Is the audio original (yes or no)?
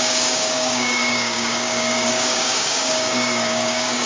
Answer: no